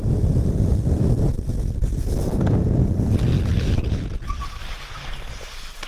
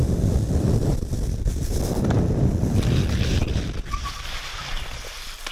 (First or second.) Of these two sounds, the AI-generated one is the second